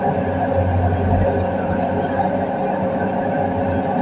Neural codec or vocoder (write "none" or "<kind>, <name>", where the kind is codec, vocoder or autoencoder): none